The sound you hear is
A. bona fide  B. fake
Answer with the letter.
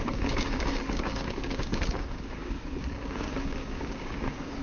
B